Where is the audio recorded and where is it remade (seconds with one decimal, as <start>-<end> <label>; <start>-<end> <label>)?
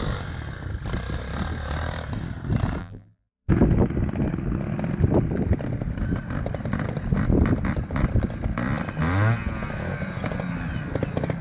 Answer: 0.0-2.8 recorded; 2.8-3.5 remade; 3.5-11.4 recorded